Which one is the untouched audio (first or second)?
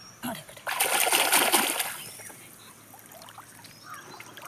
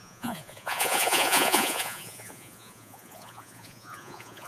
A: first